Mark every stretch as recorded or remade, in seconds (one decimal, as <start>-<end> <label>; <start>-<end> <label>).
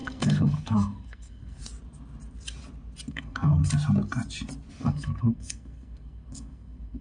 0.0-1.6 remade; 1.6-3.1 recorded; 3.1-3.6 remade; 3.6-4.7 recorded; 4.7-7.0 remade